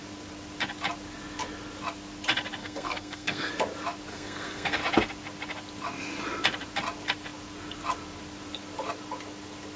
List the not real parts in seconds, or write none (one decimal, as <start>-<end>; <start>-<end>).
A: 2.6-3.5; 4.1-4.8